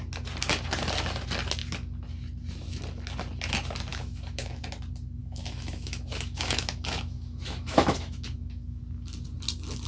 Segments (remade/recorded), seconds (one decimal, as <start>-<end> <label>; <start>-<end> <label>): 0.0-3.9 recorded; 3.9-4.6 remade; 4.6-5.2 recorded; 5.2-8.8 remade; 8.8-9.9 recorded

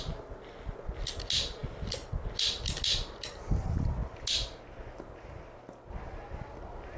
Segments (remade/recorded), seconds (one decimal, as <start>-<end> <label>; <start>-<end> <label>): 0.0-7.0 recorded